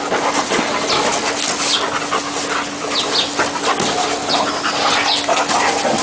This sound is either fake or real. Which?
real